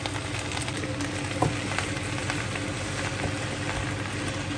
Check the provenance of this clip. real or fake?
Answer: real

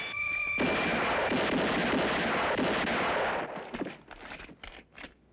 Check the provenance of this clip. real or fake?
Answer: real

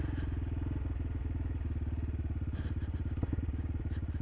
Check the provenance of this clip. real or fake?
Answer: real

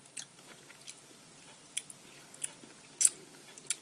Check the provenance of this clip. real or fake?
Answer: real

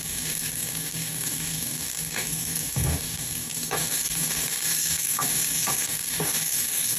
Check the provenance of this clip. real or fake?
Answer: fake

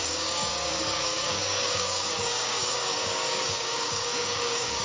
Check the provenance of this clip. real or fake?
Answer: fake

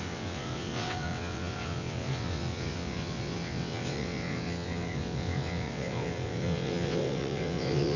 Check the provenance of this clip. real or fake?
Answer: fake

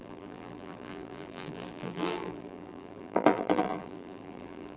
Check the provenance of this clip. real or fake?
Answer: fake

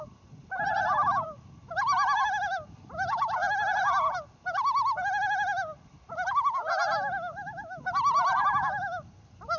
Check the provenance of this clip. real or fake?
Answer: real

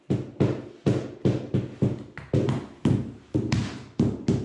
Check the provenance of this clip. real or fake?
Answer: real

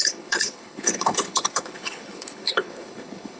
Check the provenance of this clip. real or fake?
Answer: fake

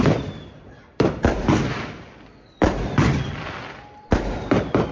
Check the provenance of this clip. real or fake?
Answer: fake